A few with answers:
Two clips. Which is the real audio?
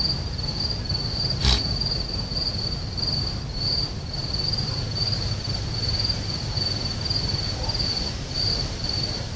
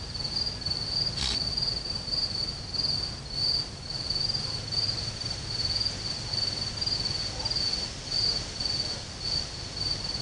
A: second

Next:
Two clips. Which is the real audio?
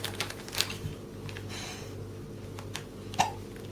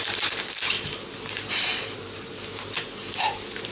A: first